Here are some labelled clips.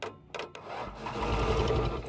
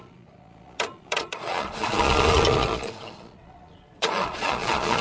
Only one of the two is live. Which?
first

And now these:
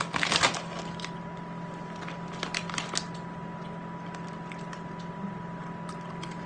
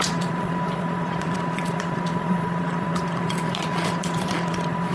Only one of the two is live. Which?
first